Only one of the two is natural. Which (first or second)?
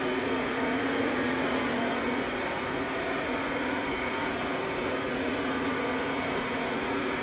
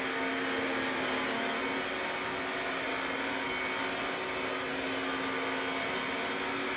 second